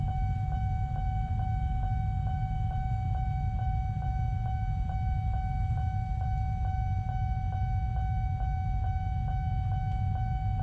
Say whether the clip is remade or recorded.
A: recorded